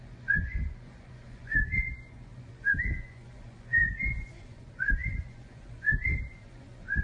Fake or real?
fake